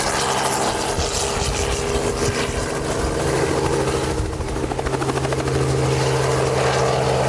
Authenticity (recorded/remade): recorded